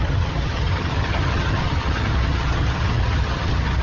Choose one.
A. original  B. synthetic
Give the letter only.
B